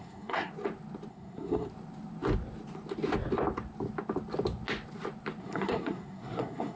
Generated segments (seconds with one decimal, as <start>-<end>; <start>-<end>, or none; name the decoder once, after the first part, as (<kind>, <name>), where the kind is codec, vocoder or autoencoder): 0.0-0.5 (codec, SNAC); 1.1-1.7; 5.4-6.8